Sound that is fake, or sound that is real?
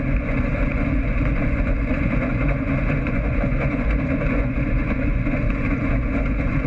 fake